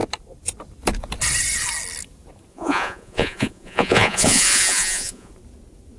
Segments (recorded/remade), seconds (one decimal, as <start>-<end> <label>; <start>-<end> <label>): 0.0-2.5 recorded; 2.5-5.3 remade; 5.3-6.0 recorded